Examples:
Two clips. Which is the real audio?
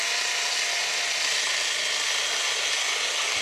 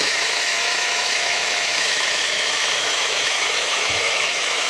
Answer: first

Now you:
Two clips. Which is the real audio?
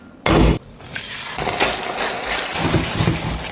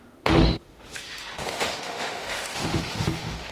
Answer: first